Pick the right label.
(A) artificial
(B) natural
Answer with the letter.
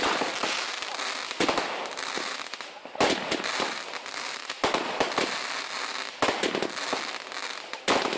B